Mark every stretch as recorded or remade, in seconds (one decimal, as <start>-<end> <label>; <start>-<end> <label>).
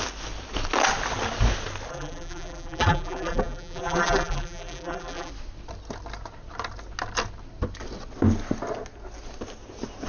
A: 0.0-1.9 recorded; 1.9-5.3 remade; 5.3-10.1 recorded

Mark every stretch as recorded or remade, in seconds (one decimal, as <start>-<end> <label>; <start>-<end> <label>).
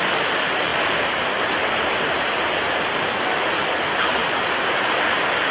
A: 0.0-4.2 remade; 4.2-4.9 recorded; 4.9-5.5 remade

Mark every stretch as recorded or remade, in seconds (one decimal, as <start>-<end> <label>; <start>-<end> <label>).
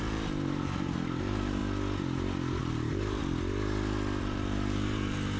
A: 0.0-1.6 remade; 1.6-2.6 recorded; 2.6-3.2 remade; 3.2-4.2 recorded; 4.2-5.4 remade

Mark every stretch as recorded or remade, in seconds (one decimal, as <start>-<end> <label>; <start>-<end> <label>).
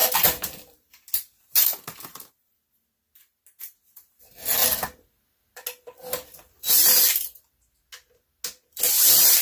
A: 0.0-2.3 remade; 2.3-9.4 recorded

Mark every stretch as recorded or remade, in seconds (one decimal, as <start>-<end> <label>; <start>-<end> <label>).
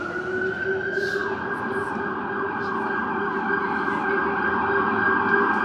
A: 0.0-5.6 recorded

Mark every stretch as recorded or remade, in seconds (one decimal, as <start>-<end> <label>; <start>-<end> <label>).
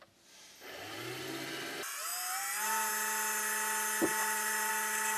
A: 0.0-4.2 recorded; 4.2-4.7 remade; 4.7-5.2 recorded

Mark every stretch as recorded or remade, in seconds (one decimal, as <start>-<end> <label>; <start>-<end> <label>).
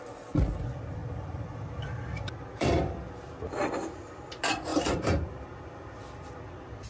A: 0.0-1.0 recorded; 1.0-3.1 remade; 3.1-4.7 recorded; 4.7-6.9 remade